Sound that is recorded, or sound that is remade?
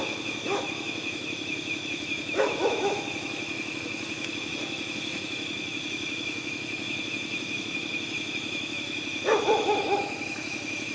remade